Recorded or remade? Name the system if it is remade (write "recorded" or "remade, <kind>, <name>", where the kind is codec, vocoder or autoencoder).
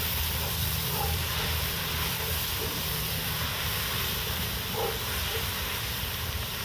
remade, vocoder, BigVGAN v2